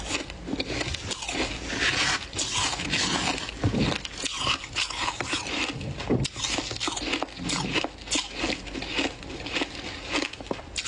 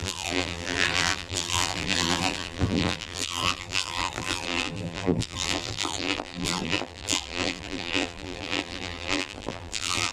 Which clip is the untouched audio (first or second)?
first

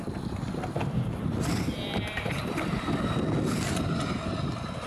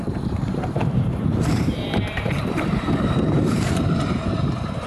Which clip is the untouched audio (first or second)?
first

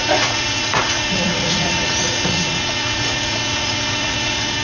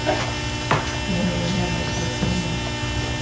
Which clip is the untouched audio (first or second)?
second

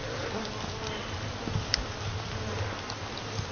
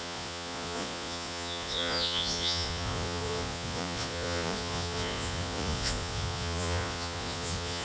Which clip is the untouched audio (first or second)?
first